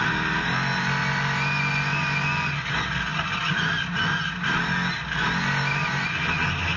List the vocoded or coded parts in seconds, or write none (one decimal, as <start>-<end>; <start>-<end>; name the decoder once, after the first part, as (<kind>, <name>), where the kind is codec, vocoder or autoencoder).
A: none